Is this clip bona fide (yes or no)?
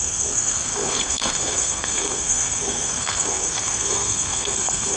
no